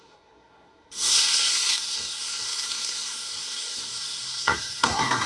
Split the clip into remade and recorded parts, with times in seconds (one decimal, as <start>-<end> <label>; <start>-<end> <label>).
0.0-5.3 remade

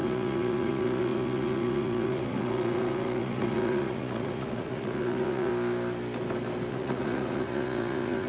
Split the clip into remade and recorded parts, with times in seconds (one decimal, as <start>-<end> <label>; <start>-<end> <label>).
0.0-5.5 remade; 5.5-6.7 recorded; 6.7-8.3 remade

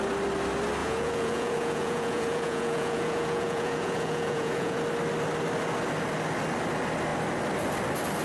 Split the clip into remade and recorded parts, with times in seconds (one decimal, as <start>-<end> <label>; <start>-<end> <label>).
0.0-0.8 recorded; 0.8-4.8 remade; 4.8-8.2 recorded

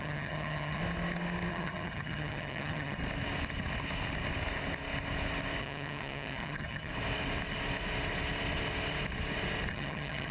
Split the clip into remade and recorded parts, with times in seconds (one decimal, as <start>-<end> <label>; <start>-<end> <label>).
0.0-0.8 remade; 0.8-1.5 recorded; 1.5-3.0 remade; 3.0-5.6 recorded; 5.6-6.9 remade; 6.9-9.7 recorded; 9.7-10.3 remade

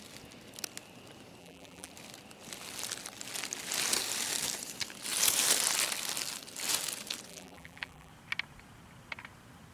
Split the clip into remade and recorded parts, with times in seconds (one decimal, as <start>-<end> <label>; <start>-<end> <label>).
0.0-1.4 recorded; 1.4-1.9 remade; 1.9-7.3 recorded; 7.3-8.1 remade; 8.1-9.7 recorded

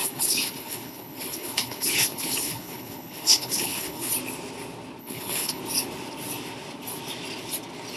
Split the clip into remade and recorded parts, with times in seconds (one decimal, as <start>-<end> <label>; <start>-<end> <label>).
0.0-4.1 remade; 4.1-5.0 recorded; 5.0-5.6 remade; 5.6-8.0 recorded

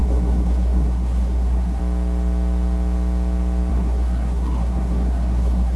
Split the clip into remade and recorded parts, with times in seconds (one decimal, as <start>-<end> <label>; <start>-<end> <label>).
0.0-1.8 remade; 1.8-3.7 recorded; 3.7-5.8 remade

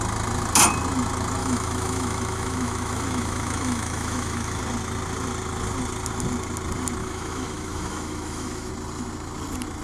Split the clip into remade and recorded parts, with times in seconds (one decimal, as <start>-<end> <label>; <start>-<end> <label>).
0.0-1.4 recorded; 1.4-4.6 remade; 4.6-7.0 recorded; 7.0-8.7 remade; 8.7-9.8 recorded